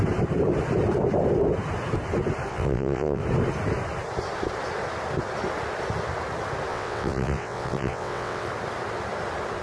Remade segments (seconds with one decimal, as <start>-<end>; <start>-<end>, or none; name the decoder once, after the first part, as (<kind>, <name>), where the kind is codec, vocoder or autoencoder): 2.5-3.2 (vocoder, WaveNeXt); 6.7-8.5